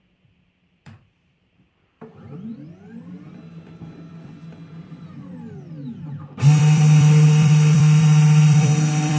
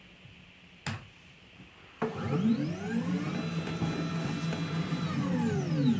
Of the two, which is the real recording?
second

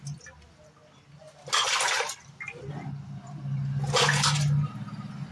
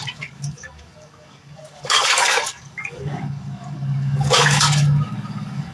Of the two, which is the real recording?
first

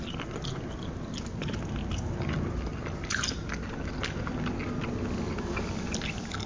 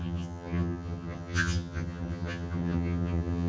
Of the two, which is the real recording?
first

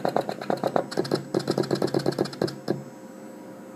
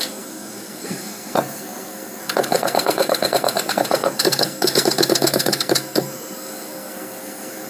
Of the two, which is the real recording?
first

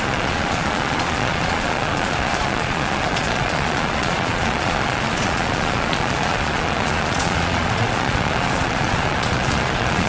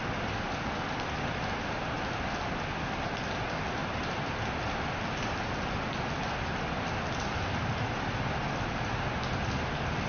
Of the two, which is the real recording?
second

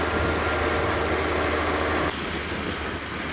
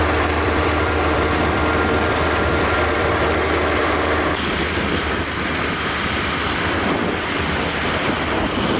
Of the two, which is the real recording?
first